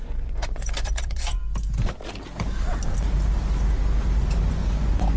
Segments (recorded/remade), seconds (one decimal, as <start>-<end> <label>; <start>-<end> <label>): 0.0-1.4 remade; 1.4-4.5 recorded; 4.5-5.2 remade